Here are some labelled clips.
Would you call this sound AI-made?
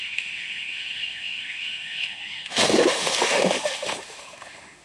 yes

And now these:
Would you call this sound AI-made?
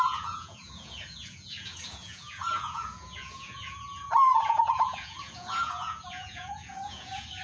yes